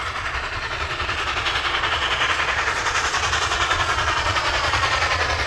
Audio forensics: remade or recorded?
remade